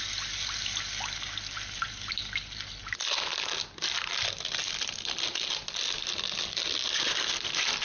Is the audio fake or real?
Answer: real